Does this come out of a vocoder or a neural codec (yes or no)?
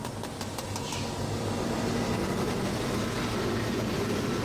no